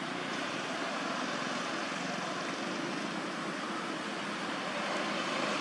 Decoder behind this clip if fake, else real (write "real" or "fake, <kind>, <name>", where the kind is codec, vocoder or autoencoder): real